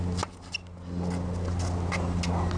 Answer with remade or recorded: recorded